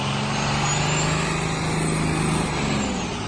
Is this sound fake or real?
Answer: real